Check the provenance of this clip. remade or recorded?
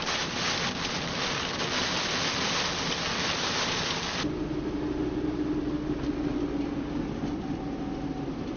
recorded